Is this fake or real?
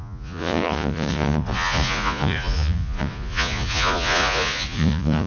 fake